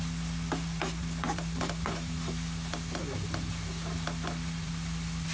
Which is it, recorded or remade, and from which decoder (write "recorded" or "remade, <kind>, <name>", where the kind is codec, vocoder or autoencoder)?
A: recorded